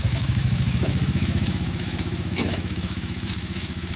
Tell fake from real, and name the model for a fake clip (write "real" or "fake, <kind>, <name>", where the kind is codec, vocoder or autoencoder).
fake, autoencoder, DAC-VAE